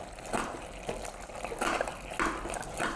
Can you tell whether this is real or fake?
real